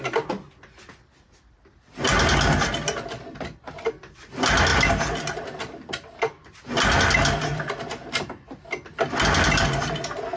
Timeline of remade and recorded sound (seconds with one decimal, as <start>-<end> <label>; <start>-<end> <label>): 0.0-10.4 recorded